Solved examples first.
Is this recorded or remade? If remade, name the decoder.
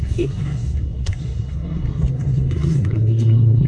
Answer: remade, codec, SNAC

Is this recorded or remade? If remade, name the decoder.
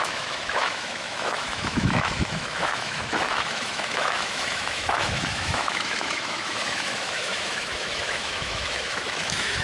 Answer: remade, autoencoder, DAC-VAE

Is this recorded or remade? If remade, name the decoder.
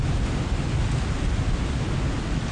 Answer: recorded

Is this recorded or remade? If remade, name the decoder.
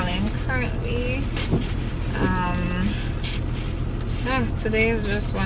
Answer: recorded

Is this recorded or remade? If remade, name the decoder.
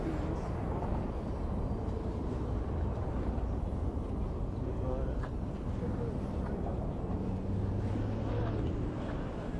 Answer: recorded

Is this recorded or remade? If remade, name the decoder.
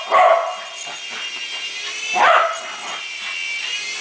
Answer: recorded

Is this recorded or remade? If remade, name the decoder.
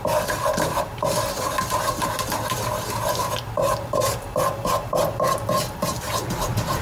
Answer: recorded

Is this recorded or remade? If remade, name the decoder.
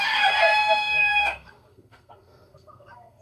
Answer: remade, codec, SNAC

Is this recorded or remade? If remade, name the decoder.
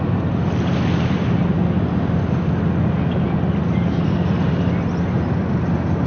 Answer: recorded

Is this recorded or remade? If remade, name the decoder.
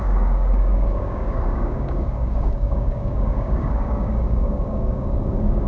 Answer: remade, codec, DAC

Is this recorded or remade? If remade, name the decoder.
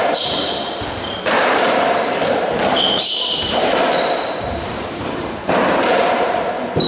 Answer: remade, vocoder, BigVGAN v2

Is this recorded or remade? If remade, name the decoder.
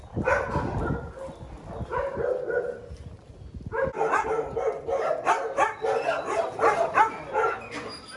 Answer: recorded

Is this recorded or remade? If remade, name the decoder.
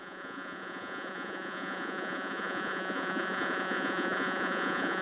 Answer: remade, vocoder, Vocos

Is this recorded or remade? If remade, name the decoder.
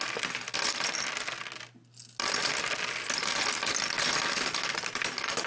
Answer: recorded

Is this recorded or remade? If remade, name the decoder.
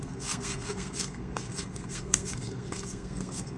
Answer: remade, codec, SNAC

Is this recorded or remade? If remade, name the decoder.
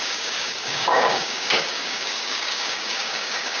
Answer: remade, codec, DAC